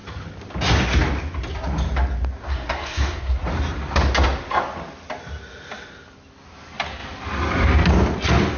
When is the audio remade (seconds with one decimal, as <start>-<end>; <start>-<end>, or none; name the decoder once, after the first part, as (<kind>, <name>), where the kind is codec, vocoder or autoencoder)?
2.4-3.4 (codec, SNAC)